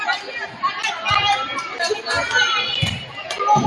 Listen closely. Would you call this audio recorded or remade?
recorded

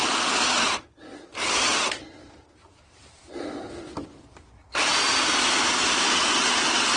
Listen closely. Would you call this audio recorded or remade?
recorded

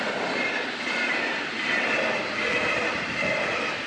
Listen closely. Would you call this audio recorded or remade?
remade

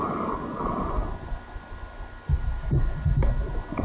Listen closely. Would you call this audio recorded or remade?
recorded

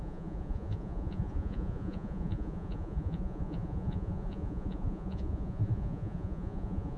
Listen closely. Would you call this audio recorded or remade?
remade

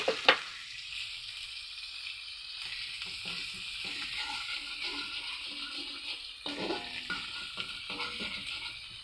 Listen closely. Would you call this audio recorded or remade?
recorded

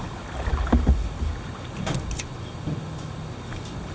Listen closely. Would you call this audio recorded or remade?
recorded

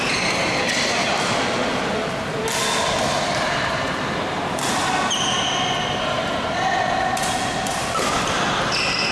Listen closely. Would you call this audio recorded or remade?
recorded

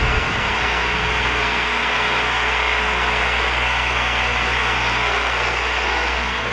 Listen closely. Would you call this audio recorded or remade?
remade